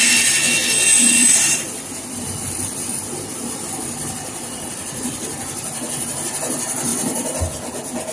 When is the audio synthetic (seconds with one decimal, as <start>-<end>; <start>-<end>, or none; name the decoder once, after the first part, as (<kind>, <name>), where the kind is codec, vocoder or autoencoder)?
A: 1.2-6.1 (vocoder, BigVGAN v2); 6.9-7.4